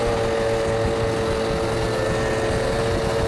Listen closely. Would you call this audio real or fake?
real